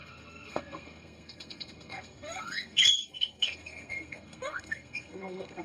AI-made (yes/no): yes